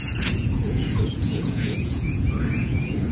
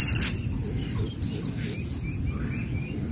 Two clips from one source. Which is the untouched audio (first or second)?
second